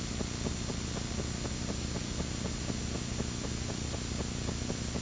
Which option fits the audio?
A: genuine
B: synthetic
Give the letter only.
A